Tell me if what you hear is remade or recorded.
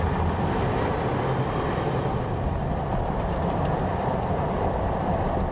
recorded